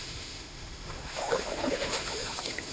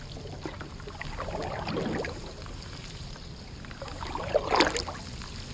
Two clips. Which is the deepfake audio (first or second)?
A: first